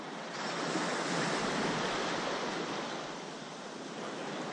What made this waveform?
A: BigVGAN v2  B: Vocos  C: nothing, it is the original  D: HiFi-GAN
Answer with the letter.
C